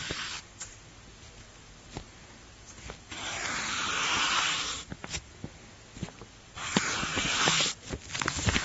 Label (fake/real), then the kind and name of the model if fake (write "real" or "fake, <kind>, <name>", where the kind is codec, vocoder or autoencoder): real